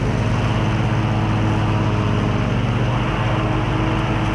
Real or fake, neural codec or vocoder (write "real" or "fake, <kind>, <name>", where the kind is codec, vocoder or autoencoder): real